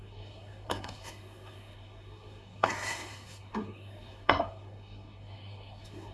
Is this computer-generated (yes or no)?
yes